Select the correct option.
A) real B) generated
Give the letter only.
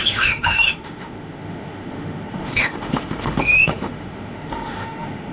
B